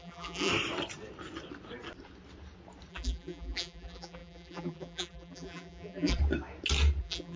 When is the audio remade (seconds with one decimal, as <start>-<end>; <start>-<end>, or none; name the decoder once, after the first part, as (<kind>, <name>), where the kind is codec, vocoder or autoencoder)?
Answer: 0.0-0.5 (vocoder, BigVGAN v2); 2.9-6.2; 7.0-7.4